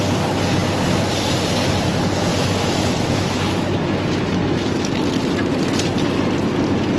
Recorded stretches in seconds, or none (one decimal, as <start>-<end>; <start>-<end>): 0.0-2.3; 4.9-7.0